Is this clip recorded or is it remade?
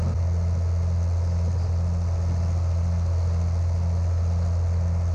recorded